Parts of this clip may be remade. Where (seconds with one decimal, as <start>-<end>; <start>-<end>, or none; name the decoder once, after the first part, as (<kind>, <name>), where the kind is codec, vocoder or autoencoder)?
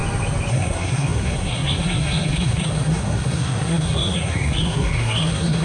0.5-5.6 (codec, SNAC)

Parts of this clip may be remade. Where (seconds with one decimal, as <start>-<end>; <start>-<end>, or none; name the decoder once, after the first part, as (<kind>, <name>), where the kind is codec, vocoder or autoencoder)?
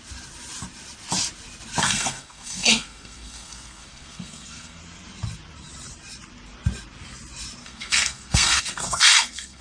1.8-4.8 (codec, SNAC); 7.6-9.6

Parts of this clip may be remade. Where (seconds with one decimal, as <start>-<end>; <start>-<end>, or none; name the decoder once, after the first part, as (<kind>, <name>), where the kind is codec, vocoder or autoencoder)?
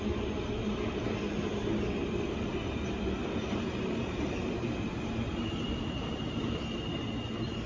2.5-7.0 (vocoder, BigVGAN v2)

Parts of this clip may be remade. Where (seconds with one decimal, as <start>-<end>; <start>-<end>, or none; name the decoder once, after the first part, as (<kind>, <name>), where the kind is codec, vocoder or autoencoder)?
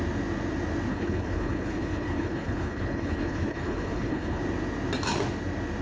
0.9-4.4 (codec, HILCodec)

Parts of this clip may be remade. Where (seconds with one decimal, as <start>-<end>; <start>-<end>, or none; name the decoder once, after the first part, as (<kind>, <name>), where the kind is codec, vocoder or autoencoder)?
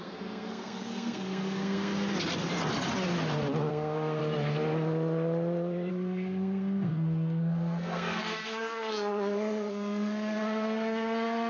0.0-1.9 (codec, SNAC); 3.7-4.2; 5.9-11.5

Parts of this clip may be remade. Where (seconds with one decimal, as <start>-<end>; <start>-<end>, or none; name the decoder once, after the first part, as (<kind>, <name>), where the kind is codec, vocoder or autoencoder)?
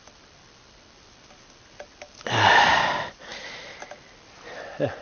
none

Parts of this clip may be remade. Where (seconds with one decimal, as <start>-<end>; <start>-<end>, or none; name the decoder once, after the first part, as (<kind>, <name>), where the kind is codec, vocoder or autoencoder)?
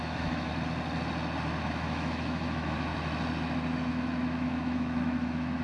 0.0-0.5 (autoencoder, DAC-VAE); 1.6-2.9; 3.9-5.6